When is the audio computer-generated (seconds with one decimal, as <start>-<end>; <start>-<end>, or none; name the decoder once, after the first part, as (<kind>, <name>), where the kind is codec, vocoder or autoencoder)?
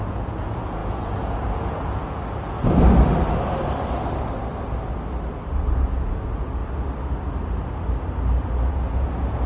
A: 0.0-2.0 (vocoder, Vocos); 5.6-6.6; 8.7-9.5